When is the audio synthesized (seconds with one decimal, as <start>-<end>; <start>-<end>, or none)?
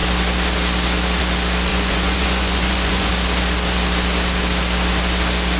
1.7-3.1